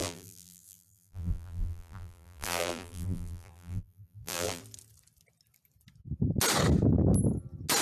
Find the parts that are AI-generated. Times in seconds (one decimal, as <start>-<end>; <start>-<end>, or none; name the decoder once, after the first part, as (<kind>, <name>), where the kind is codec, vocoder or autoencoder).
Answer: 0.0-4.6 (vocoder, BigVGAN v2)